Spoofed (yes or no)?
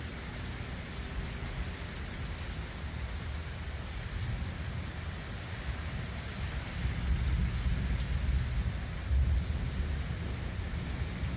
no